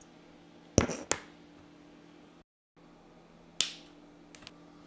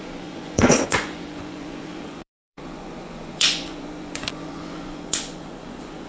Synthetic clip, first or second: second